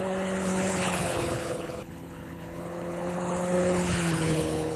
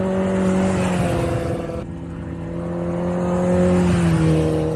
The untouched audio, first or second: second